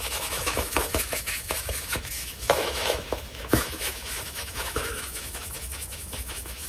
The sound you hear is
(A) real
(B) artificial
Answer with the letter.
B